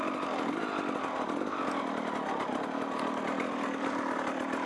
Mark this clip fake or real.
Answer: real